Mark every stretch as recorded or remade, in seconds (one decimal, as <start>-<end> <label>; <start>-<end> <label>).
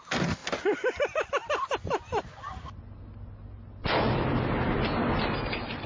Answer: 0.0-5.9 recorded